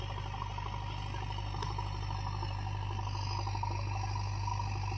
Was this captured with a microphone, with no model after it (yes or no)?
yes